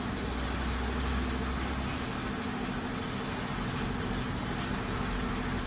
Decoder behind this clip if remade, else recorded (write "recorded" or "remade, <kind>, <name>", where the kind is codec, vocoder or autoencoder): recorded